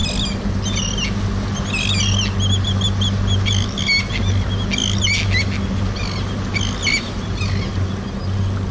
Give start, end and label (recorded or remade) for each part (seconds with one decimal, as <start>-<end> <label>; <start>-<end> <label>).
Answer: 0.0-8.7 recorded